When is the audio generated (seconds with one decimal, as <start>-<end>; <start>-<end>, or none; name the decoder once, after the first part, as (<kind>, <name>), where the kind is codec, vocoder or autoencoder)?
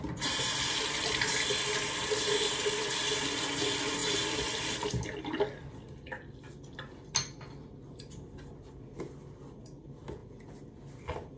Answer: none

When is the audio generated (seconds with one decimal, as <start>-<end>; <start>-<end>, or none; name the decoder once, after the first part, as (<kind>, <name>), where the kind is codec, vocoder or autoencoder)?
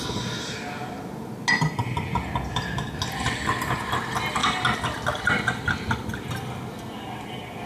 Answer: none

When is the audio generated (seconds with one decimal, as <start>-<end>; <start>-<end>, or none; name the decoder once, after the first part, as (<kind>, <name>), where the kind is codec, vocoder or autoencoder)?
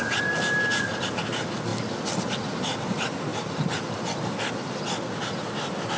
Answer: 3.3-5.2 (vocoder, BigVGAN v2)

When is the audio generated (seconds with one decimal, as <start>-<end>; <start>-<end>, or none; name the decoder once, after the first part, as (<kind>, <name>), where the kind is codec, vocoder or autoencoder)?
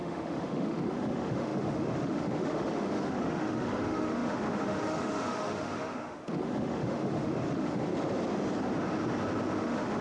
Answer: 0.0-7.9 (autoencoder, DAC-VAE); 9.6-10.0